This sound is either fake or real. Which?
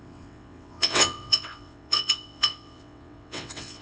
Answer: fake